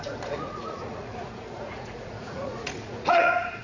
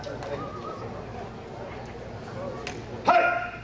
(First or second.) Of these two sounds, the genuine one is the second